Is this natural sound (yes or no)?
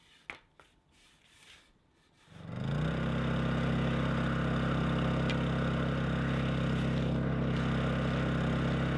yes